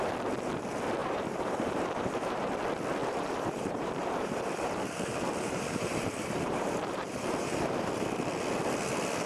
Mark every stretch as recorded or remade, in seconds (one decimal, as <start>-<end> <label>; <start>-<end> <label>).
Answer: 0.0-1.0 recorded; 1.0-2.5 remade; 2.5-3.0 recorded; 3.0-7.9 remade; 7.9-9.3 recorded